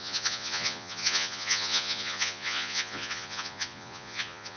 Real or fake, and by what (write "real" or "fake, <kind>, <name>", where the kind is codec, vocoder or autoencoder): fake, vocoder, Vocos